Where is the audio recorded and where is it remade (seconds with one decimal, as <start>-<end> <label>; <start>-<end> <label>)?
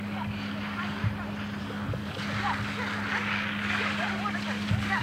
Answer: 0.0-1.0 remade; 1.0-1.6 recorded; 1.6-5.0 remade